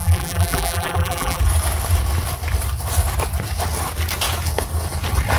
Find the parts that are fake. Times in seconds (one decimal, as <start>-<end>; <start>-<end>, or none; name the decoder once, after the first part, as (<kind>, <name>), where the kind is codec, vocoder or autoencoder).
0.0-1.4 (vocoder, BigVGAN v2)